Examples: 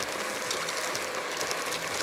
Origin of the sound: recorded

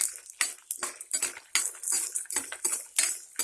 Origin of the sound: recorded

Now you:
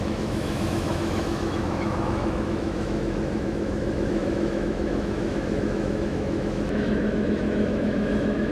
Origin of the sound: remade